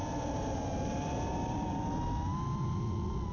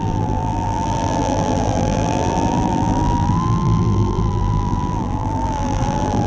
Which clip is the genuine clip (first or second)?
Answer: first